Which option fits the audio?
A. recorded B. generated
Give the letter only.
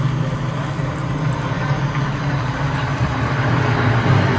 A